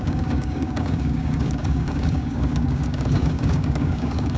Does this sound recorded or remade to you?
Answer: remade